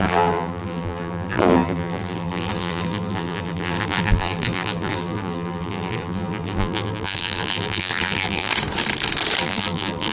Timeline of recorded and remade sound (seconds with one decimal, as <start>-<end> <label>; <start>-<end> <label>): 0.0-8.5 remade; 8.5-9.4 recorded; 9.4-10.1 remade